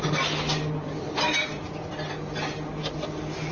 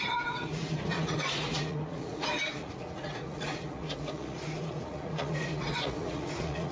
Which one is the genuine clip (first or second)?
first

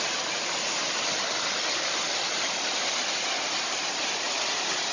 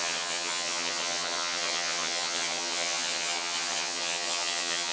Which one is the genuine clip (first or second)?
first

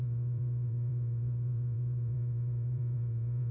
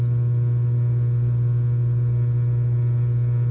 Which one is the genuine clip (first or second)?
second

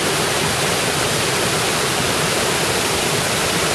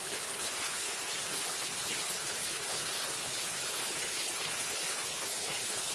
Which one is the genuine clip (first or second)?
first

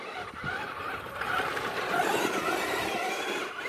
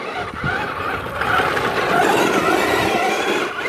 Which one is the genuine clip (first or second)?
second